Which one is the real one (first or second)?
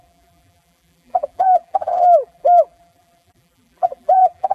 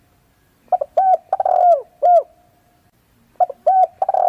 second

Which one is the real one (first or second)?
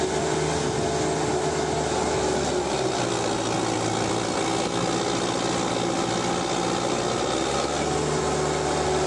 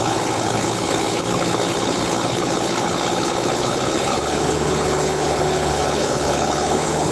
first